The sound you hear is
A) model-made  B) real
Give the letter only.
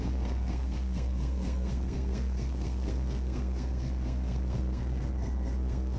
A